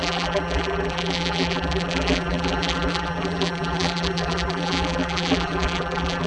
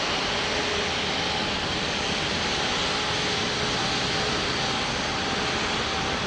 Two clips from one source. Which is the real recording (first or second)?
second